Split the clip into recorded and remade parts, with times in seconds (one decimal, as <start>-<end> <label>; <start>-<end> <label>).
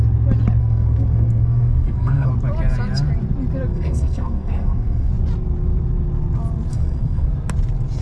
0.0-0.6 recorded; 0.6-2.3 remade; 2.3-3.7 recorded; 3.7-5.1 remade; 5.1-6.7 recorded; 6.7-7.3 remade; 7.3-8.0 recorded